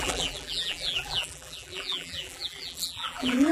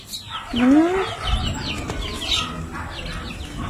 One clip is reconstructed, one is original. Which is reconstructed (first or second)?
first